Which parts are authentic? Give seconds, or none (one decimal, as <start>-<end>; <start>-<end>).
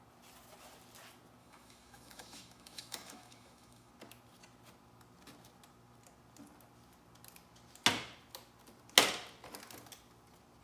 0.0-1.4; 3.9-10.6